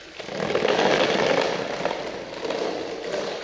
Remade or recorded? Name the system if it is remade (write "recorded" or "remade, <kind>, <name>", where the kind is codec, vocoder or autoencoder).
recorded